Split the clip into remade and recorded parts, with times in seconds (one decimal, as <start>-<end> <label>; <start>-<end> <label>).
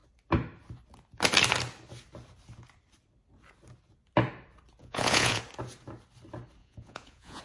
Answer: 0.0-4.8 recorded; 4.8-5.4 remade; 5.4-6.6 recorded; 6.6-7.4 remade